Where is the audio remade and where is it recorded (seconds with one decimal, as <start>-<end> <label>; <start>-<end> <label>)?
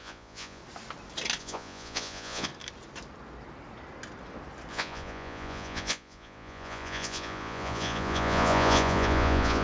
0.0-0.6 remade; 0.6-1.4 recorded; 1.4-2.5 remade; 2.5-4.7 recorded; 4.7-9.6 remade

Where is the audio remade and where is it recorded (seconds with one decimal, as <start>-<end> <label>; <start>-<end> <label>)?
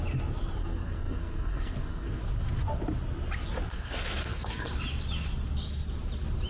0.0-0.6 recorded; 0.6-2.2 remade; 2.2-3.7 recorded; 3.7-4.7 remade; 4.7-6.5 recorded